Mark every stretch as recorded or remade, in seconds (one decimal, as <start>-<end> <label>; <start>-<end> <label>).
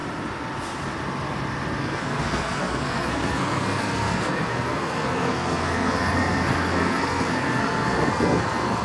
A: 0.0-1.8 recorded; 1.8-8.8 remade